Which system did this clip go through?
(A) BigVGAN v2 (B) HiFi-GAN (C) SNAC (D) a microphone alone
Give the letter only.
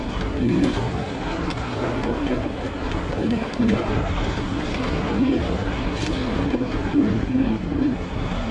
C